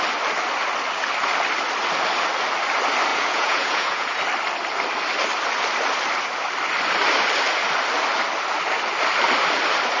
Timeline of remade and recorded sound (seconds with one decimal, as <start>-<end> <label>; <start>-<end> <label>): 0.0-3.1 recorded; 3.1-4.2 remade; 4.2-10.0 recorded